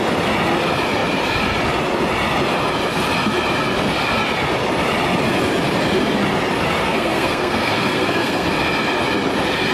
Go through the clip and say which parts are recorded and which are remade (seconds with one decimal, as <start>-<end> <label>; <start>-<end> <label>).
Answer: 0.0-6.8 recorded; 6.8-8.5 remade; 8.5-9.7 recorded